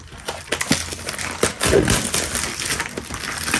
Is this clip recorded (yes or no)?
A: yes